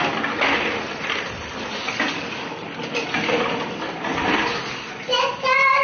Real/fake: real